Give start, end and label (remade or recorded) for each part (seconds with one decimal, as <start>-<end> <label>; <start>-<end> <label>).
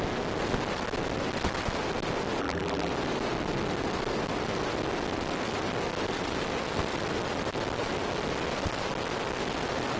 0.0-2.4 recorded; 2.4-2.9 remade; 2.9-10.0 recorded